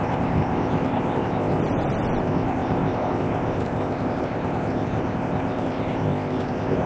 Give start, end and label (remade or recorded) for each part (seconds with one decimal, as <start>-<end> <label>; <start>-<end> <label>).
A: 0.0-1.6 remade; 1.6-2.2 recorded; 2.2-6.9 remade